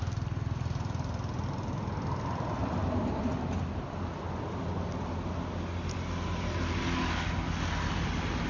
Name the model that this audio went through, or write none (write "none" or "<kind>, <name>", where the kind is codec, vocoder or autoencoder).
none